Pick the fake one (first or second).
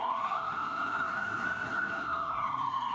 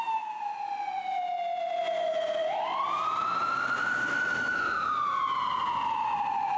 first